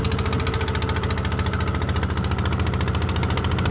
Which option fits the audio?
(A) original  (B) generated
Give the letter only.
A